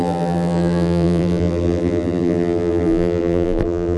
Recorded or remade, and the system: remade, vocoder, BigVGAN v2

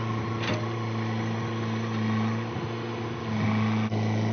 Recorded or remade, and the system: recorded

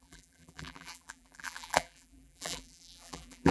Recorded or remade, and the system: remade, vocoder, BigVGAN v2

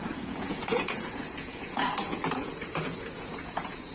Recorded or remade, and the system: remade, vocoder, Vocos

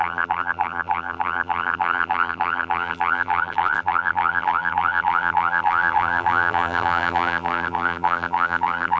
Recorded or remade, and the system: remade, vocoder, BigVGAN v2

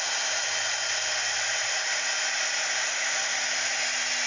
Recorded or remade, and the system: recorded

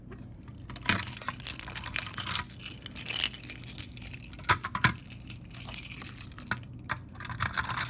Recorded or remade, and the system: recorded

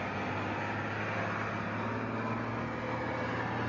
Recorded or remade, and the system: recorded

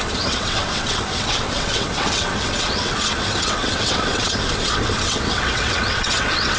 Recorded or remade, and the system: remade, vocoder, WaveNeXt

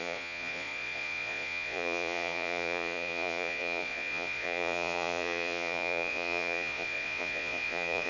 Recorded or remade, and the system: remade, vocoder, Vocos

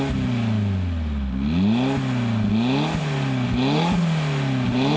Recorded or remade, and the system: recorded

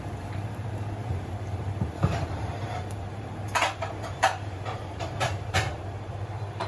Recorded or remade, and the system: remade, vocoder, BigVGAN v2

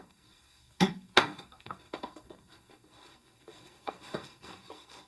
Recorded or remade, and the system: remade, codec, SNAC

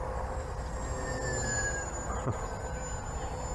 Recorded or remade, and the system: recorded